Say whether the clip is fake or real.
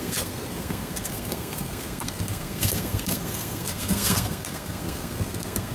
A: fake